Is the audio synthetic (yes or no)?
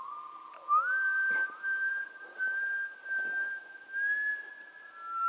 no